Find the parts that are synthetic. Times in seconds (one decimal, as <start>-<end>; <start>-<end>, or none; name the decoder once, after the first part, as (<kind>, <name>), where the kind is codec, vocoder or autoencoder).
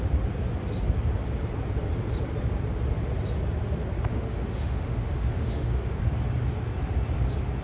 4.1-6.0 (autoencoder, DAC-VAE)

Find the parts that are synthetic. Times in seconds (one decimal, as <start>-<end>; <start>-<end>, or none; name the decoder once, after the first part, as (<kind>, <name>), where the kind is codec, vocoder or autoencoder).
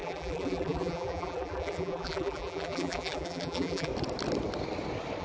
0.0-3.9 (vocoder, BigVGAN v2)